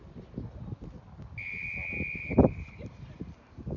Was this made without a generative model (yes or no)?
yes